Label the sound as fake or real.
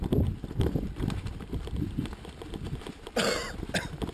real